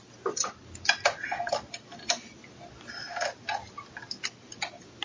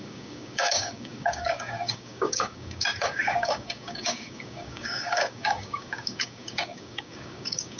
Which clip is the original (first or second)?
first